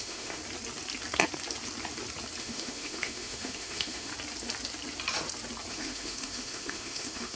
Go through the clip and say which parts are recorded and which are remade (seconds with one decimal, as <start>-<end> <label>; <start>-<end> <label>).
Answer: 0.0-0.4 remade; 0.4-2.4 recorded; 2.4-4.1 remade; 4.1-5.7 recorded; 5.7-7.4 remade